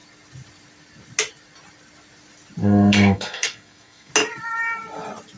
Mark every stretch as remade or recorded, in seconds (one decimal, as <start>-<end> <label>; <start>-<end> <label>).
0.0-2.6 recorded; 2.6-4.1 remade; 4.1-5.4 recorded